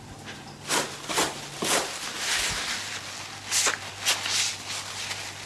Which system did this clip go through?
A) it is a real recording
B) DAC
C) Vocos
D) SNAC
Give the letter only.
A